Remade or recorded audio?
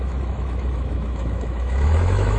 remade